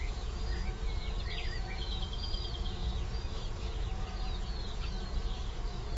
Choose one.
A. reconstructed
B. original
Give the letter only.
A